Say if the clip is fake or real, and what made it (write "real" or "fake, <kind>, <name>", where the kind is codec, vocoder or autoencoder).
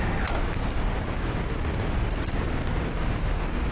real